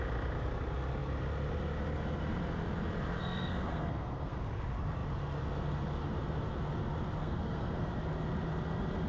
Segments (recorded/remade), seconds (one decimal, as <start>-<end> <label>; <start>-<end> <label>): 0.0-3.2 recorded; 3.2-4.4 remade; 4.4-7.2 recorded; 7.2-7.9 remade; 7.9-9.1 recorded